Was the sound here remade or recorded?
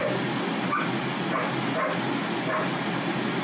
recorded